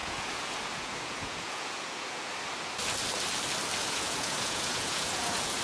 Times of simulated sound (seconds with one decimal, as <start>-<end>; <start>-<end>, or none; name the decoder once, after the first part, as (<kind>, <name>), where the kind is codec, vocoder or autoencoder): 0.0-2.3 (vocoder, Vocos); 3.8-5.6